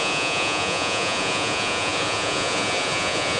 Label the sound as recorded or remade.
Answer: remade